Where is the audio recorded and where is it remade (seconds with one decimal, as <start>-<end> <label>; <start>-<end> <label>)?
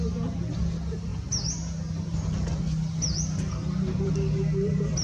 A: 0.0-5.0 recorded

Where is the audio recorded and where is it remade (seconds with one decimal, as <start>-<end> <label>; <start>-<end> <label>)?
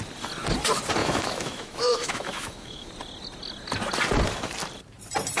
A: 0.0-1.0 recorded; 1.0-2.9 remade; 2.9-5.4 recorded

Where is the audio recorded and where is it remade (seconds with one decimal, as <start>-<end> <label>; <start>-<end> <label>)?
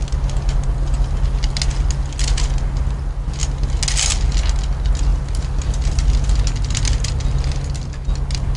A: 0.0-5.1 recorded; 5.1-5.9 remade; 5.9-8.6 recorded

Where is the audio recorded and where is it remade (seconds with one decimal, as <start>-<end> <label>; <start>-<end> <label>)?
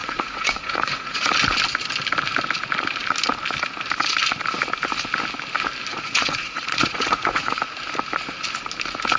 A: 0.0-1.3 remade; 1.3-5.9 recorded; 5.9-7.6 remade; 7.6-9.2 recorded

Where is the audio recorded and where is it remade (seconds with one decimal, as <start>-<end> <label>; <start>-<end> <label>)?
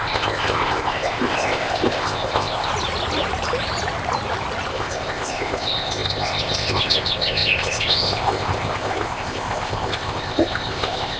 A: 0.0-2.7 remade; 2.7-4.7 recorded; 4.7-11.2 remade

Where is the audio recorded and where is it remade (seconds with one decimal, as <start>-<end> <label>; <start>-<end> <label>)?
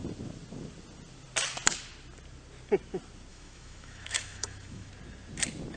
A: 0.0-3.3 recorded; 3.3-4.9 remade; 4.9-5.8 recorded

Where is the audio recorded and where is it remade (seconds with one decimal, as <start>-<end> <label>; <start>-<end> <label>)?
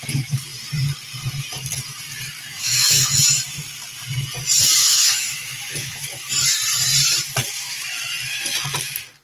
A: 0.0-2.5 recorded; 2.5-3.2 remade; 3.2-4.8 recorded; 4.8-6.3 remade; 6.3-9.2 recorded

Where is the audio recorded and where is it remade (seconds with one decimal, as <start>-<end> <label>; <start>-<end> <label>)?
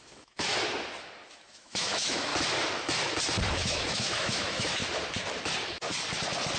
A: 0.0-0.5 remade; 0.5-1.3 recorded; 1.3-2.3 remade; 2.3-3.5 recorded; 3.5-4.8 remade; 4.8-6.6 recorded